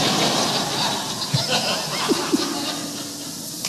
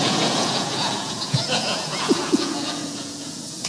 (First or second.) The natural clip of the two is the first